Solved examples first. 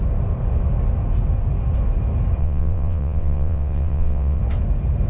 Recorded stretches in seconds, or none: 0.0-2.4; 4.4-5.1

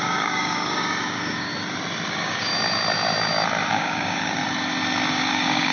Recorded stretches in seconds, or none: 1.5-2.1; 2.5-3.7; 4.4-5.1

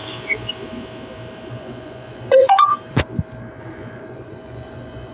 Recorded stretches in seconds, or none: 0.0-1.5; 2.7-3.5

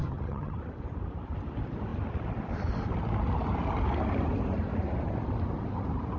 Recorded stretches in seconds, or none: 0.6-6.2

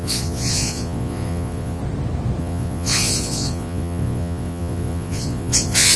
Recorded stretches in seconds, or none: 1.8-2.4